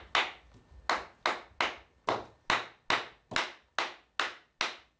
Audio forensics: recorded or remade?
recorded